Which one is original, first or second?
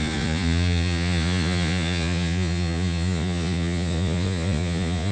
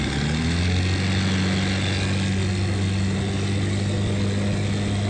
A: second